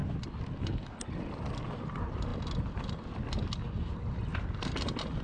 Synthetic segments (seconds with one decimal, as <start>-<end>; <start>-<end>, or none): none